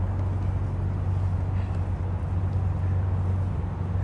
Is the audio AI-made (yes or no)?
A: no